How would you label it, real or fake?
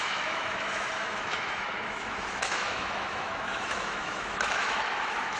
fake